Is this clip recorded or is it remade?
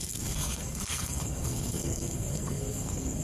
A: remade